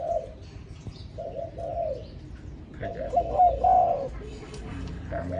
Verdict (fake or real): fake